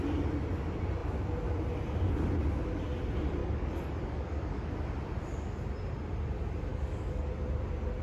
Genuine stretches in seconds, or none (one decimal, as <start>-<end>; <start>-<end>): 0.0-3.4; 4.7-6.7; 7.3-8.0